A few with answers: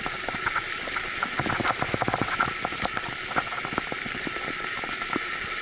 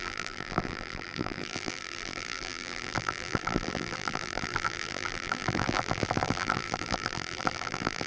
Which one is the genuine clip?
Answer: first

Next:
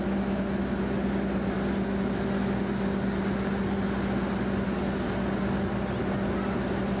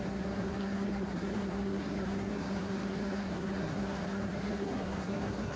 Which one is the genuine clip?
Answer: first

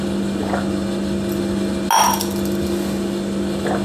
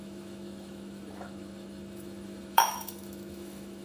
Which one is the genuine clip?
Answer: first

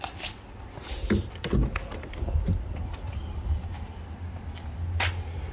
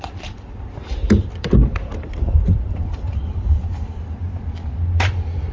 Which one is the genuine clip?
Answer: first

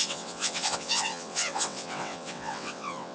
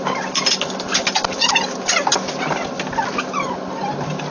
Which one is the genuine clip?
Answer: second